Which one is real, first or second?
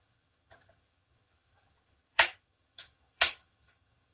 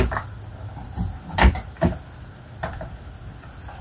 second